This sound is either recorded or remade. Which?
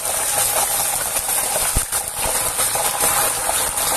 recorded